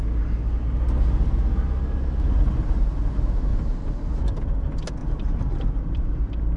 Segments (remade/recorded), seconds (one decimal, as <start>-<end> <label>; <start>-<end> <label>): 0.0-3.5 recorded; 3.5-4.2 remade; 4.2-5.0 recorded; 5.0-6.0 remade; 6.0-6.6 recorded